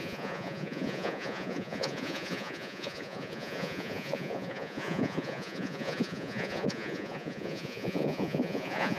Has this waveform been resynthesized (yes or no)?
yes